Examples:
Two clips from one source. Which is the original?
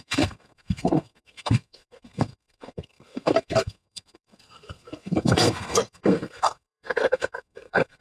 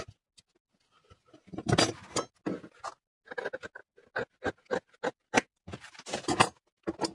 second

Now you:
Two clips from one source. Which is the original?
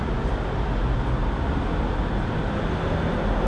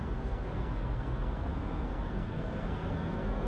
first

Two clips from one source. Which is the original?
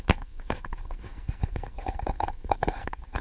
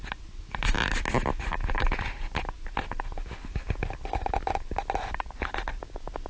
second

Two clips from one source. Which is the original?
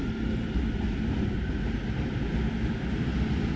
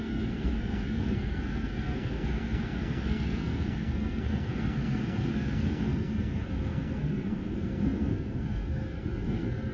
first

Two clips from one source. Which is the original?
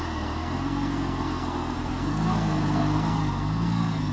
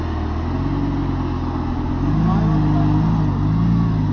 second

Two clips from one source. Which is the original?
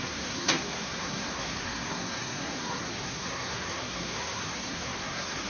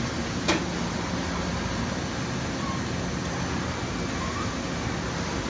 second